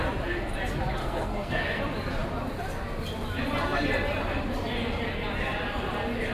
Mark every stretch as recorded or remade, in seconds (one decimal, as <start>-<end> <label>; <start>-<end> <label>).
0.0-1.0 recorded; 1.0-1.8 remade; 1.8-6.3 recorded